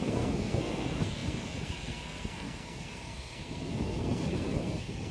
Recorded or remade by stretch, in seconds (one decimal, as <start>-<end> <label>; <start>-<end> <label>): 0.0-5.1 remade